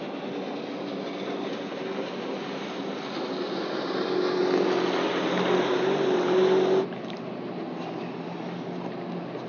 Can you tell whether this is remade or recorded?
recorded